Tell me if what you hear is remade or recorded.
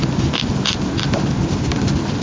recorded